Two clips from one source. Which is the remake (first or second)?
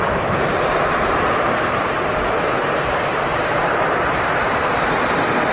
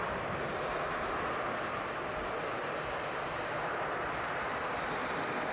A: first